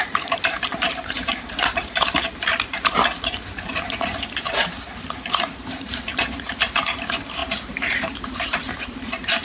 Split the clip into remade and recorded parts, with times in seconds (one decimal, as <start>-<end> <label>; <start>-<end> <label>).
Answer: 0.0-9.4 remade